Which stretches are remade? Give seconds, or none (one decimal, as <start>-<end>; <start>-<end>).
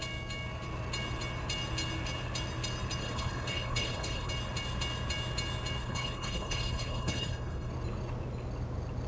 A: 3.0-4.3; 5.8-7.7